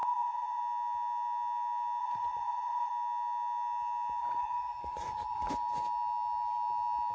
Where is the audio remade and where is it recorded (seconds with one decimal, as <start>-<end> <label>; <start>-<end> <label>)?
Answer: 0.0-0.6 remade; 0.6-2.0 recorded; 2.0-2.9 remade; 2.9-4.2 recorded; 4.2-5.5 remade; 5.5-7.1 recorded